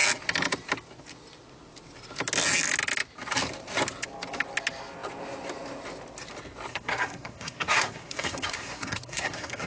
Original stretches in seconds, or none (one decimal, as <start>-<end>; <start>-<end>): 0.0-6.7